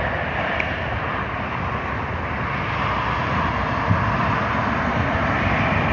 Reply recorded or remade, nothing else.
recorded